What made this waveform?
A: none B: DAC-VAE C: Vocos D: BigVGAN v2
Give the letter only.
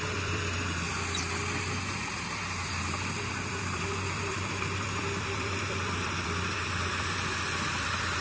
D